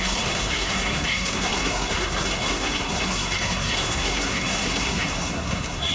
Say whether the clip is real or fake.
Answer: fake